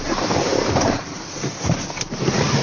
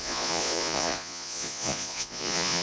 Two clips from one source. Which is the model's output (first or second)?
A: second